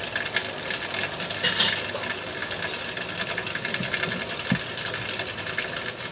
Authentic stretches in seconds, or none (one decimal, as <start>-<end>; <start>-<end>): 0.0-6.1